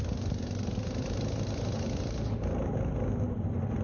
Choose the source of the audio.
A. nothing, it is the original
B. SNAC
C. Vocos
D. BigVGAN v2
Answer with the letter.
A